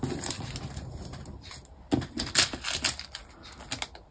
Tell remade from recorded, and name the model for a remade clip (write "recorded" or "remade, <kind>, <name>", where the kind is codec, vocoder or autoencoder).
recorded